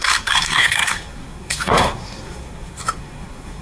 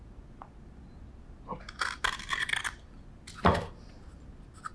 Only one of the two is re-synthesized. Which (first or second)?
first